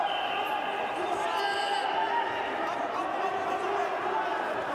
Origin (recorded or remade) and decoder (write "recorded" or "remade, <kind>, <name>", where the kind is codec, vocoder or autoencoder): recorded